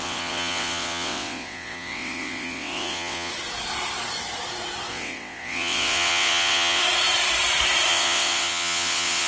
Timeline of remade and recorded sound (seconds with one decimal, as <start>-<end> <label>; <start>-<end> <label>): 0.0-3.3 remade; 3.3-4.9 recorded; 4.9-6.8 remade; 6.8-7.9 recorded; 7.9-9.3 remade